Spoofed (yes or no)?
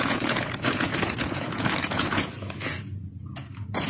yes